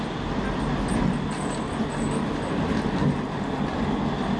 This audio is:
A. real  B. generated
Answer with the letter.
A